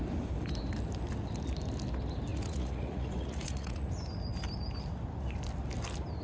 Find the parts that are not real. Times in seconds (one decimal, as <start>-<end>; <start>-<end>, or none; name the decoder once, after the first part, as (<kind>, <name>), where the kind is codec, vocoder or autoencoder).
2.3-3.9 (vocoder, Vocos)